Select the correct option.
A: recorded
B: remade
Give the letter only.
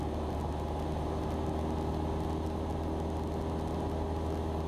A